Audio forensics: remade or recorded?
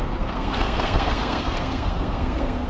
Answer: remade